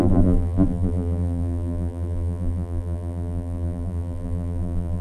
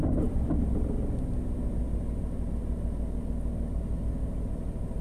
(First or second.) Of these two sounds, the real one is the second